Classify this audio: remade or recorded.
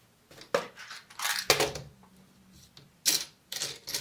recorded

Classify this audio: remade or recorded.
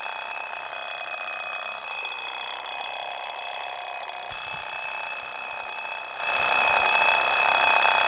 recorded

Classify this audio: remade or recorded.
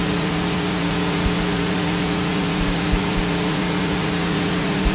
remade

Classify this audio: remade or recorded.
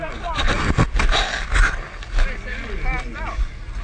recorded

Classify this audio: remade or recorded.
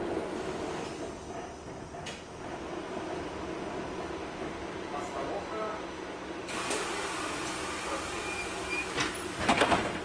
recorded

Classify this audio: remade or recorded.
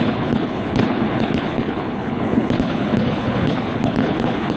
remade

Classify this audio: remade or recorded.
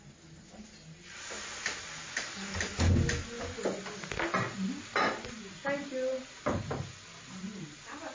recorded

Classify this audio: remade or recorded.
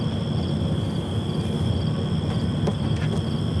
recorded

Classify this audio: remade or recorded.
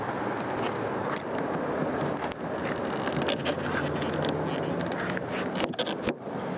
recorded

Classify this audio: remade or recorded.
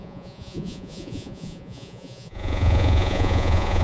remade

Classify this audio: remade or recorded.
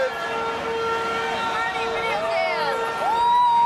recorded